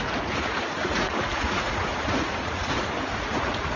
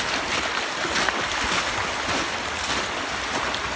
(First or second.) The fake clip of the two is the first